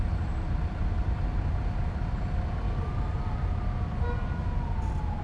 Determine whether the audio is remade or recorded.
recorded